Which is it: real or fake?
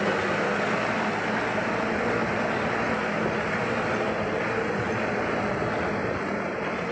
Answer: real